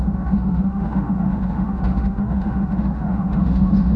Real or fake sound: fake